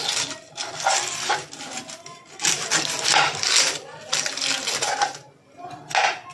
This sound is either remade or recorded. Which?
recorded